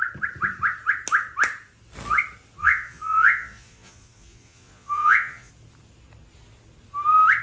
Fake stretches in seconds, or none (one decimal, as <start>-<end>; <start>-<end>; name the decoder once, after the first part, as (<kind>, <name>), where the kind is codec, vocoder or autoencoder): 2.6-5.5 (vocoder, Vocos)